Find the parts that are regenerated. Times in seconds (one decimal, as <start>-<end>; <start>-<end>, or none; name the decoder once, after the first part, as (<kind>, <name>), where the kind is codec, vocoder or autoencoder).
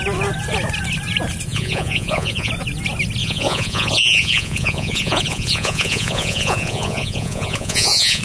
1.5-2.5 (vocoder, Vocos); 3.2-8.2